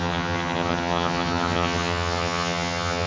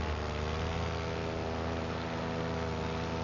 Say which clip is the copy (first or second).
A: first